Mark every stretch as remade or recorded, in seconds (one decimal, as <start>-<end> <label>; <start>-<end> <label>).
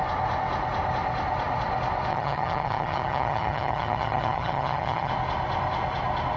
0.0-2.1 recorded; 2.1-5.1 remade; 5.1-6.4 recorded